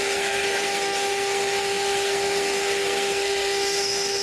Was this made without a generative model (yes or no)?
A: no